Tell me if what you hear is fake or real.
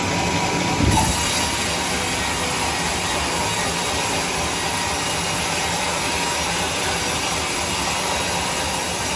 real